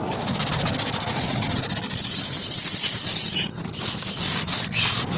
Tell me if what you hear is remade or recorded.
recorded